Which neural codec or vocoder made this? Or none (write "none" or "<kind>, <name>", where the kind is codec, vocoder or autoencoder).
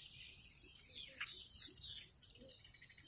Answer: none